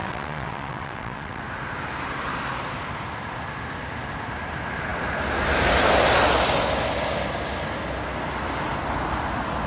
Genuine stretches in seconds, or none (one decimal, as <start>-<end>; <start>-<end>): 1.4-9.7